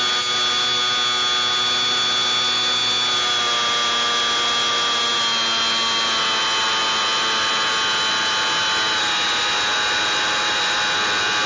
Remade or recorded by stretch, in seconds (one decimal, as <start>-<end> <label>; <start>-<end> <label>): 0.0-11.5 recorded